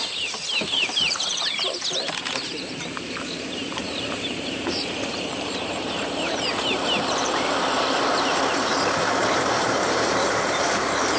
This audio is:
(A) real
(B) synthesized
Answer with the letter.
B